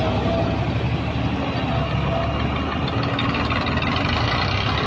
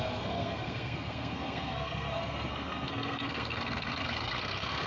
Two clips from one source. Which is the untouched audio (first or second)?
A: first